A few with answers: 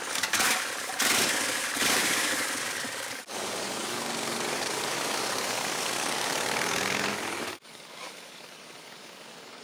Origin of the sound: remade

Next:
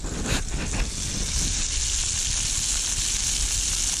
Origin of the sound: recorded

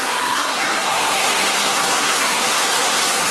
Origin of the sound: remade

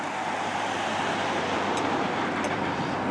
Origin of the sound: remade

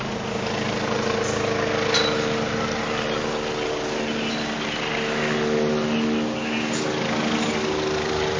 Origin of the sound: recorded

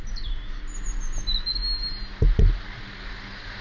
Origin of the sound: recorded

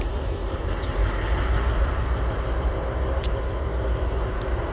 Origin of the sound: remade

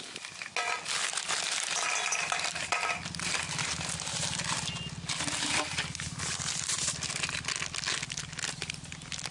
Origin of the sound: recorded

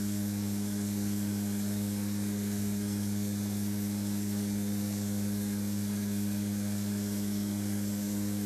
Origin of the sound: remade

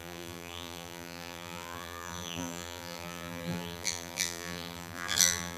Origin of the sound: remade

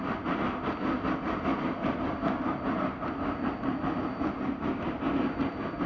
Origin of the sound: recorded